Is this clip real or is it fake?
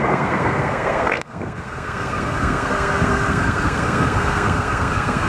fake